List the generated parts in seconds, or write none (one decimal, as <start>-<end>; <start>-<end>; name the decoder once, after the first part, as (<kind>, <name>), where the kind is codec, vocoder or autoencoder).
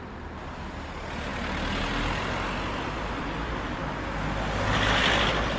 none